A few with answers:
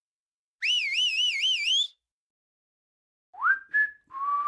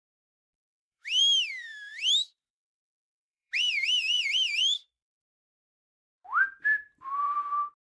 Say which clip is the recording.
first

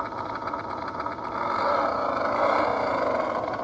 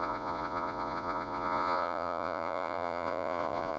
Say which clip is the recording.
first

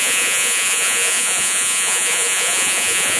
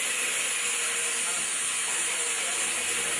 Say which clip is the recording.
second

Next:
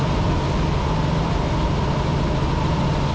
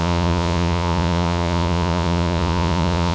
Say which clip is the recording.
first